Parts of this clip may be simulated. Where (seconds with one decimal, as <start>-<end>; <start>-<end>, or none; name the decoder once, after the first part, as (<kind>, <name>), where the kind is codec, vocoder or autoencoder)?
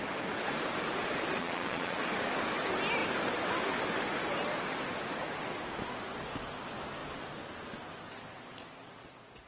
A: 1.4-2.0 (vocoder, Vocos)